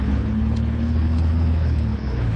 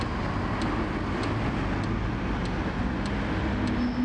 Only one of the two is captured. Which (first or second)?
second